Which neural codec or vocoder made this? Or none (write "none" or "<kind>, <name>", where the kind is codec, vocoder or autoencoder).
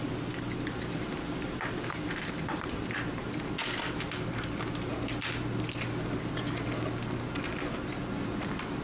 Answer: none